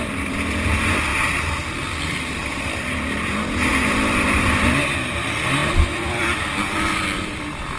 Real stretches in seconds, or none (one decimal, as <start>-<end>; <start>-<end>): 0.0-5.6; 6.2-7.8